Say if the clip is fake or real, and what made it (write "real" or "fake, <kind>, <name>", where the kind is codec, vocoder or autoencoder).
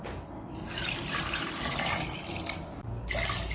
real